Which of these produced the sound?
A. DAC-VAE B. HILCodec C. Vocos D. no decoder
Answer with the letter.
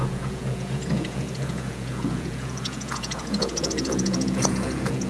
C